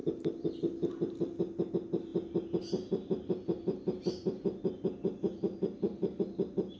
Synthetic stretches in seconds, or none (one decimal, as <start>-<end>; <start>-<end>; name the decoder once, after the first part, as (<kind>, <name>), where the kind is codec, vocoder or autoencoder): none